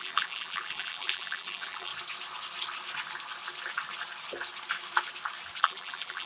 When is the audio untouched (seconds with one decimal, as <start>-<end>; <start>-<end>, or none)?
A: 1.9-5.6